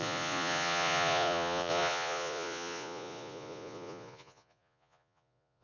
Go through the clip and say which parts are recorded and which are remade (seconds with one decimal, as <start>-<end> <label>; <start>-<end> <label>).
0.0-5.6 remade